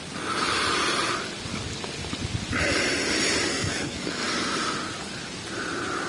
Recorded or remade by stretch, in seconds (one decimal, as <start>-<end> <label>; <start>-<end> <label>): 0.0-3.5 recorded; 3.5-4.3 remade; 4.3-6.1 recorded